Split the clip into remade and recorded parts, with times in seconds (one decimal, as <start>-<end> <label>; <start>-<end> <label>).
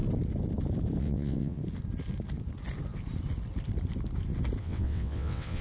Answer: 0.0-1.0 recorded; 1.0-1.6 remade; 1.6-4.6 recorded; 4.6-5.6 remade